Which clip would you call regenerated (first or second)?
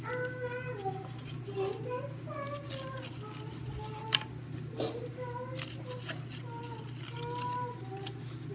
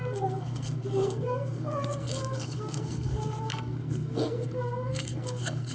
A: second